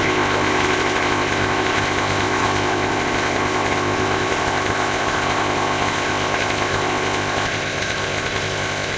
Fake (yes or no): yes